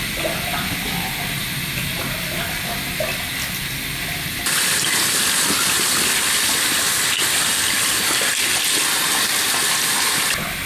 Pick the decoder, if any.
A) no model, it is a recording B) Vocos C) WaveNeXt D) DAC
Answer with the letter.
A